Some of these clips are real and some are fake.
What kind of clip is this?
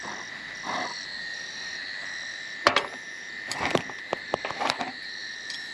real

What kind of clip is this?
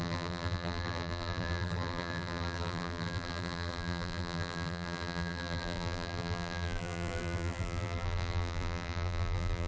fake